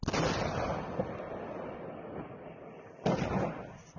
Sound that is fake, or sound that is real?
real